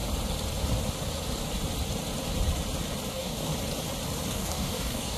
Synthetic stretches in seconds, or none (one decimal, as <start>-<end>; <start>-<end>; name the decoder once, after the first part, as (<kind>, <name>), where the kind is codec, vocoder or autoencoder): 3.1-3.5 (codec, DAC); 4.3-5.2